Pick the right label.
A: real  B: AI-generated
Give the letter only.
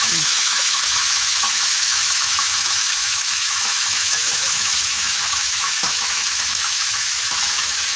B